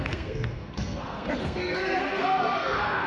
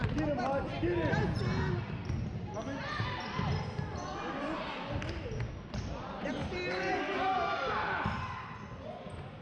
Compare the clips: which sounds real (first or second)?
second